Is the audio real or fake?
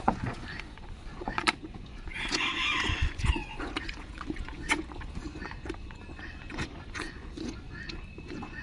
fake